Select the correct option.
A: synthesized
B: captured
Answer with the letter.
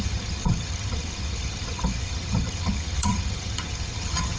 A